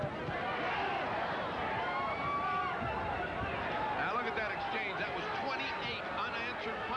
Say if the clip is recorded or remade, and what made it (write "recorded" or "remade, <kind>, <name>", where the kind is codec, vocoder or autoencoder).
recorded